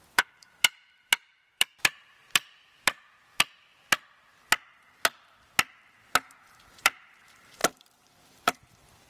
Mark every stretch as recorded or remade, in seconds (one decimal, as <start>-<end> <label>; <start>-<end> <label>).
0.0-2.2 remade; 2.2-6.4 recorded; 6.4-9.1 remade